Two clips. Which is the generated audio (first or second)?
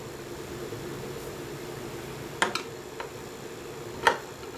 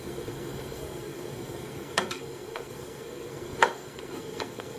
second